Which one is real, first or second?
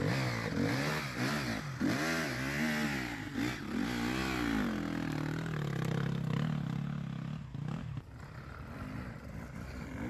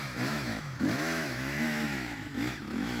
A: first